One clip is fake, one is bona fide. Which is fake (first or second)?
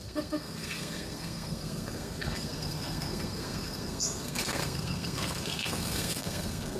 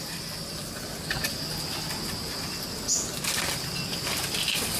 first